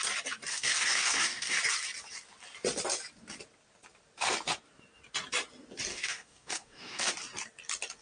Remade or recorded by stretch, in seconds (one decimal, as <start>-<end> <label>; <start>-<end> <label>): 0.0-0.5 recorded; 0.5-1.6 remade; 1.6-5.9 recorded; 5.9-7.1 remade; 7.1-8.0 recorded